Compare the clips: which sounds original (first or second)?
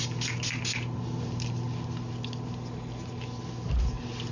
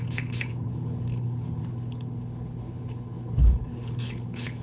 first